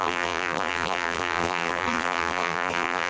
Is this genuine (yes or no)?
no